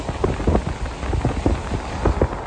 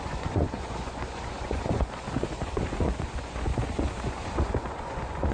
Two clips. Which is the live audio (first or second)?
first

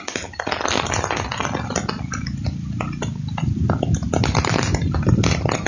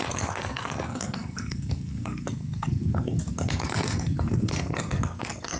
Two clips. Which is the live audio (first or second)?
first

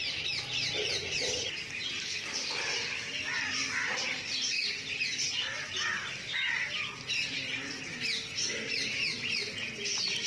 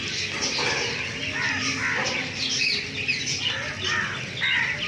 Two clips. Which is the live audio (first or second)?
second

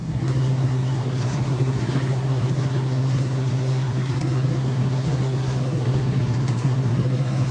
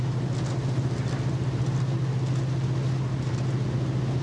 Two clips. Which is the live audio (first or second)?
second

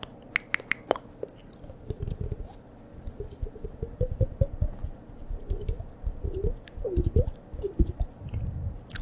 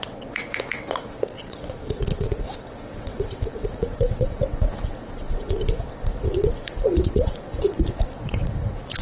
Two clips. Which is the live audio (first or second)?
first